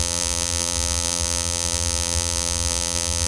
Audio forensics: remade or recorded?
remade